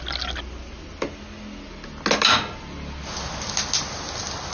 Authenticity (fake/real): real